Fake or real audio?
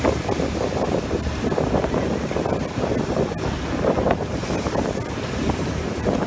real